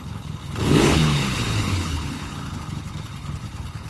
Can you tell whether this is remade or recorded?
remade